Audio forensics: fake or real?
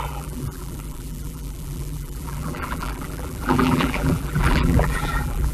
fake